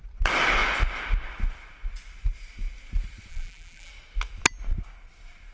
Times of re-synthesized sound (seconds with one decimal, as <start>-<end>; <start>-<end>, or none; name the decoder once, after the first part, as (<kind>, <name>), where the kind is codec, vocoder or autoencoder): 3.3-3.9 (vocoder, BigVGAN v2)